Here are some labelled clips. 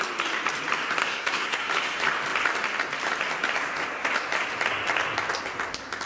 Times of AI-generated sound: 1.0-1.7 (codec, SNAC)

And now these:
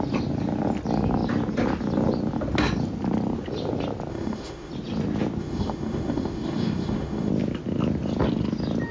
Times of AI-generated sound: 4.1-4.7 (autoencoder, DAC-VAE); 5.4-7.3

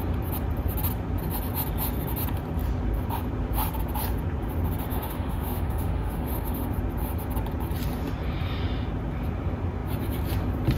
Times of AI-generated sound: 4.9-6.7 (autoencoder, DAC-VAE)